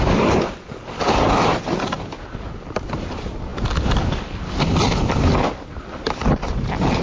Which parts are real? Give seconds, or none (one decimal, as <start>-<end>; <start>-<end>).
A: 0.0-7.0